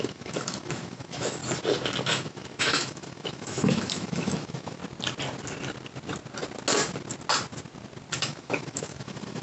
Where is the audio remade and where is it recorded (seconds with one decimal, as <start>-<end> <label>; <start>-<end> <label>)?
0.0-1.4 remade; 1.4-2.0 recorded; 2.0-4.8 remade; 4.8-8.2 recorded; 8.2-9.4 remade